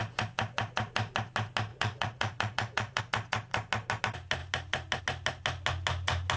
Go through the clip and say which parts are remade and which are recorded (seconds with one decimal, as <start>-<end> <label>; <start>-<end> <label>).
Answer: 0.0-1.7 recorded; 1.7-3.0 remade; 3.0-6.4 recorded